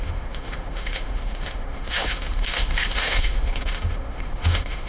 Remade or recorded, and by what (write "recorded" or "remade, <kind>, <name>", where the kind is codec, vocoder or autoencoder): remade, autoencoder, DAC-VAE